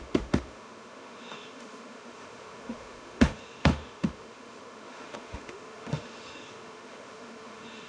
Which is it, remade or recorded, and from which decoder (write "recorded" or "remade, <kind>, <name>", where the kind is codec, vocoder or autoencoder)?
remade, autoencoder, DAC-VAE